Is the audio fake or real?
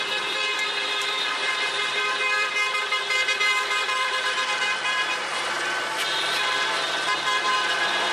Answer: fake